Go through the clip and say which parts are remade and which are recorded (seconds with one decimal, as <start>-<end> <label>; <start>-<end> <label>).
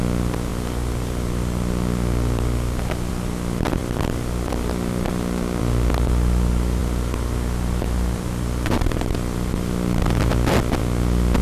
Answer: 0.0-11.4 recorded